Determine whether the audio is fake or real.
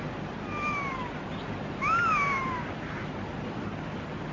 real